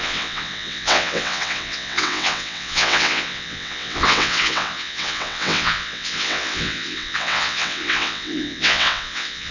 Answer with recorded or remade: remade